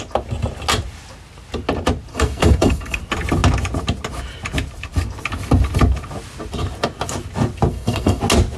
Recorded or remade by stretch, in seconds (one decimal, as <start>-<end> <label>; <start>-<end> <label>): 0.0-2.1 recorded; 2.1-3.0 remade; 3.0-7.7 recorded; 7.7-8.2 remade; 8.2-8.6 recorded